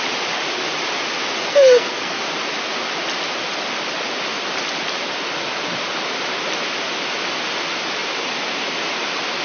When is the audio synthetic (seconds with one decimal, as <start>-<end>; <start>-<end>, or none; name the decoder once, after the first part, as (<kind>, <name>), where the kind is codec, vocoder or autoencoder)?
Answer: 1.5-2.2 (codec, SNAC)